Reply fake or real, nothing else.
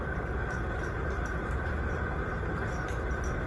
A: real